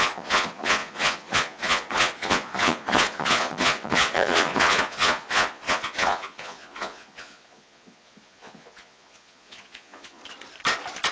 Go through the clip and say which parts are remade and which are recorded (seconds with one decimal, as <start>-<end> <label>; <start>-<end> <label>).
0.0-10.2 remade; 10.2-11.1 recorded